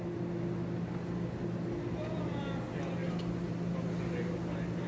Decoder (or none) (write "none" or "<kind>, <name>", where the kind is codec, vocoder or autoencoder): none